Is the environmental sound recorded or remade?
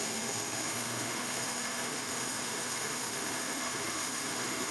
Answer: remade